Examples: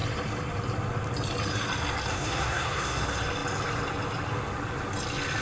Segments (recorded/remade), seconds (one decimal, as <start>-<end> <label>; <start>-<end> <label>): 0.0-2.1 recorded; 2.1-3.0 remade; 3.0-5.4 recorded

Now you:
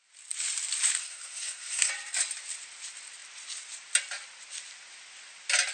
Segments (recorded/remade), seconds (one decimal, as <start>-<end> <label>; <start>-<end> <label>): 0.0-1.0 recorded; 1.0-1.9 remade; 1.9-5.7 recorded

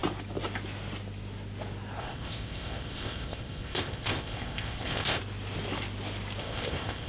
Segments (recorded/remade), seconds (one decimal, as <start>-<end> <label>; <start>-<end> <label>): 0.0-2.0 recorded; 2.0-5.2 remade; 5.2-6.4 recorded; 6.4-7.1 remade

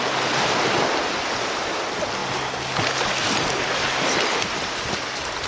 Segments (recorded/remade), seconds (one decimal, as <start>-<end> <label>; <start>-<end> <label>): 0.0-5.5 recorded

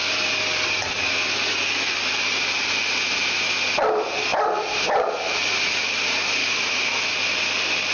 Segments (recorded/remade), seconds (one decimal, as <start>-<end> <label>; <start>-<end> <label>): 0.0-6.4 recorded; 6.4-7.1 remade; 7.1-7.9 recorded

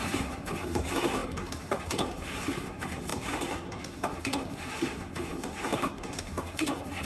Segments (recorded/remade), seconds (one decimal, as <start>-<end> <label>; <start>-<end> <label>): 0.0-7.1 remade

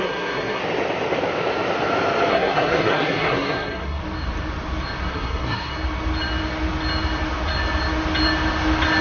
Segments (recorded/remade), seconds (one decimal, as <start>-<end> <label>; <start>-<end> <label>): 0.0-0.6 remade; 0.6-2.3 recorded; 2.3-4.0 remade; 4.0-5.1 recorded; 5.1-5.7 remade; 5.7-9.0 recorded

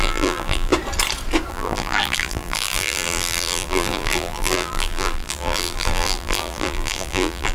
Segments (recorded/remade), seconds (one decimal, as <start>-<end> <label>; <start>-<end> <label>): 0.0-0.7 remade; 0.7-1.5 recorded; 1.5-7.5 remade